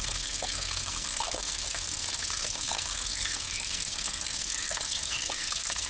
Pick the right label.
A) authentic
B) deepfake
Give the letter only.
B